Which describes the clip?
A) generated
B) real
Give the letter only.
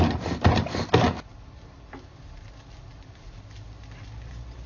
B